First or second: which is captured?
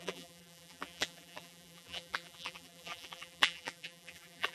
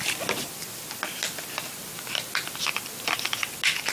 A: second